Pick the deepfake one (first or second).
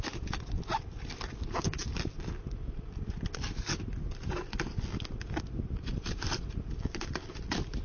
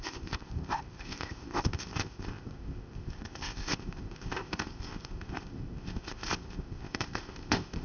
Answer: second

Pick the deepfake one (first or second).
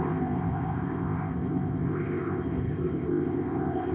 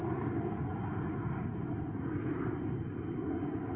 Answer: first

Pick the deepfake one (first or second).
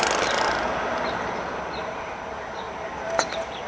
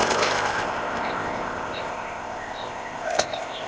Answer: second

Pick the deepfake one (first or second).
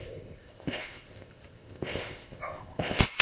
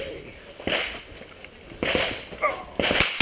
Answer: first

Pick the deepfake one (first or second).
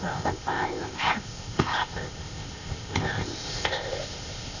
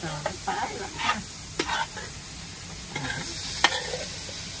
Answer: first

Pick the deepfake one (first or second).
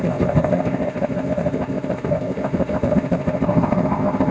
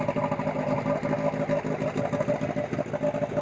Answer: first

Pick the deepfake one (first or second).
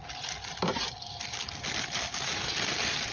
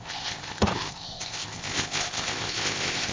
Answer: second